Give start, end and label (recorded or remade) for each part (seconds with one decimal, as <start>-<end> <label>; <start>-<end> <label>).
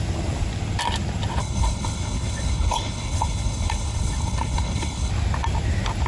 0.0-1.4 recorded; 1.4-5.1 remade; 5.1-6.1 recorded